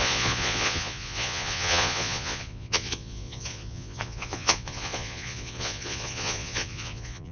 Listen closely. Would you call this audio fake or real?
fake